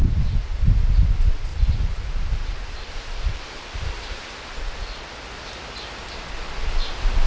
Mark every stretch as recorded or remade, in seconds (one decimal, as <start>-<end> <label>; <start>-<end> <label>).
0.0-1.5 recorded; 1.5-4.6 remade; 4.6-7.3 recorded